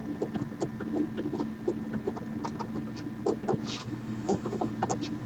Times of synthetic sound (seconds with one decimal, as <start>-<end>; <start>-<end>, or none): 3.8-4.7